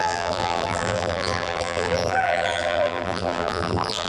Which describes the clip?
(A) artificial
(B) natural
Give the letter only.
A